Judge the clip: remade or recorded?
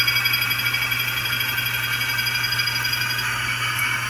recorded